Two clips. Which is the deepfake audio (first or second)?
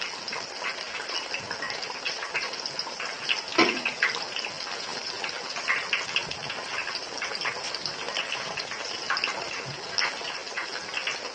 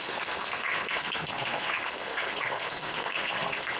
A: second